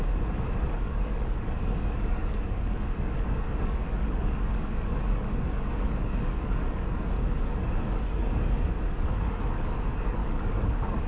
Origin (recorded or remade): remade